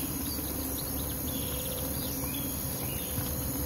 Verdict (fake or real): real